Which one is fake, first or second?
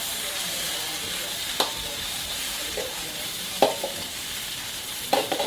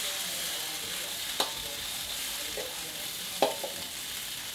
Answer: first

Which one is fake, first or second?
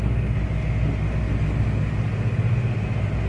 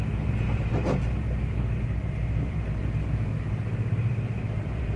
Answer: second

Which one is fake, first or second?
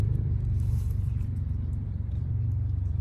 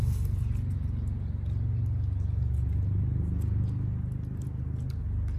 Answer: first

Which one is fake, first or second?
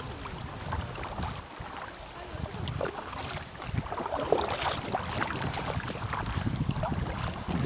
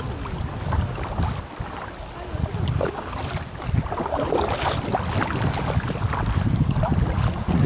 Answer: first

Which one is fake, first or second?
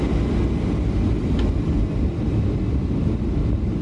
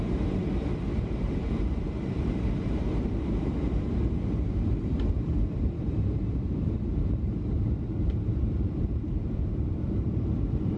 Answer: second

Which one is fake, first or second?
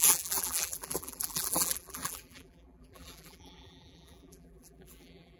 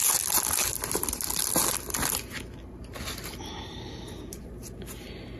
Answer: first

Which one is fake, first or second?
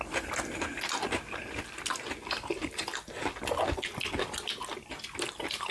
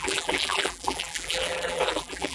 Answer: second